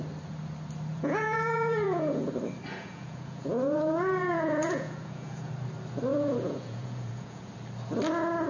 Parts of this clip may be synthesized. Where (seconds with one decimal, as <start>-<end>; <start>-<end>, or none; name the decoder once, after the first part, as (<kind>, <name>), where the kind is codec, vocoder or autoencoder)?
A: 0.9-2.3 (vocoder, Vocos); 2.7-5.5; 6.1-7.5